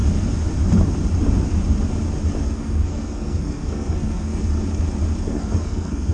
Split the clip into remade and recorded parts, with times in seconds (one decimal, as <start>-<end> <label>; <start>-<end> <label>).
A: 0.0-2.4 recorded; 2.4-4.5 remade; 4.5-5.2 recorded; 5.2-6.1 remade